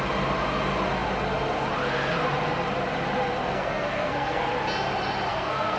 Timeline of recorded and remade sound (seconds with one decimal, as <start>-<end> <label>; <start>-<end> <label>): 0.0-3.4 recorded; 3.4-4.5 remade; 4.5-5.3 recorded; 5.3-5.8 remade